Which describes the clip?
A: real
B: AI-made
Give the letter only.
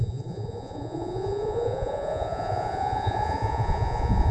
B